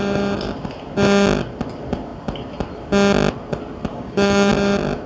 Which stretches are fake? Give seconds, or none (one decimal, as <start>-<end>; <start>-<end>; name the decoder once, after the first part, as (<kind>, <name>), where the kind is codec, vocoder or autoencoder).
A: 3.9-4.5 (codec, DAC)

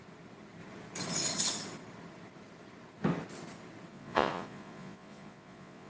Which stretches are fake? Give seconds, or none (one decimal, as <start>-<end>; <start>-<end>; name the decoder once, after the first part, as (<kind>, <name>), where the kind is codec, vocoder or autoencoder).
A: 3.9-5.9 (vocoder, Vocos)

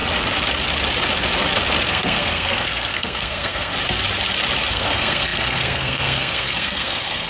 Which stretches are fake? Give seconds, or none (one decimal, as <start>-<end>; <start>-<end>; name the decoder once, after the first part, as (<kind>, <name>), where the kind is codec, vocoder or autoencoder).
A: 1.9-3.7 (codec, SNAC); 4.7-7.3

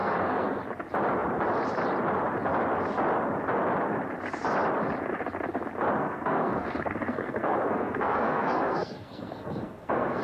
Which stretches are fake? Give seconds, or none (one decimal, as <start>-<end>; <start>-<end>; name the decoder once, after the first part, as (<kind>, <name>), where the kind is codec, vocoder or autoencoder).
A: 0.0-0.6 (codec, SNAC); 6.0-10.2

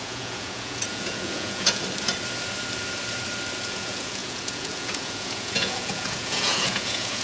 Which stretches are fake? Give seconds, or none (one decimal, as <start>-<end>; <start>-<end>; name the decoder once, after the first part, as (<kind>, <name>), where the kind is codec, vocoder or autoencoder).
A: 0.0-1.8 (vocoder, Vocos); 3.6-7.2

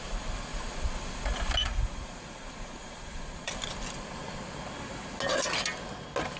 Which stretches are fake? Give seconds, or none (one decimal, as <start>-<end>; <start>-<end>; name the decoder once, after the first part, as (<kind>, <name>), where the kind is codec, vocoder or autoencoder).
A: 1.6-3.5 (vocoder, Vocos)